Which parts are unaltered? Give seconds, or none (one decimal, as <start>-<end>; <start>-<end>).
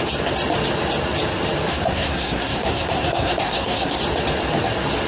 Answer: 0.0-1.7; 4.0-5.1